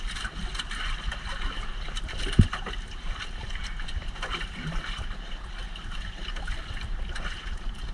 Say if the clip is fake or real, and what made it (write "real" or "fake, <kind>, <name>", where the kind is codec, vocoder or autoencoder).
real